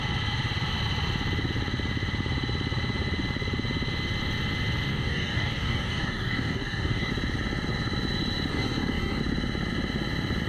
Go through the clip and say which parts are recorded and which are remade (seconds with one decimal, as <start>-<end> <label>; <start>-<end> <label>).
0.0-4.9 recorded; 4.9-7.1 remade; 7.1-8.5 recorded; 8.5-9.2 remade; 9.2-10.5 recorded